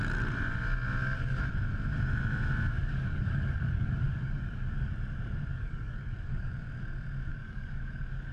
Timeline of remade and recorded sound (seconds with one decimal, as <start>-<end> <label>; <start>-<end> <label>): 0.0-2.8 recorded; 2.8-4.9 remade; 4.9-5.5 recorded; 5.5-6.5 remade; 6.5-7.3 recorded; 7.3-8.3 remade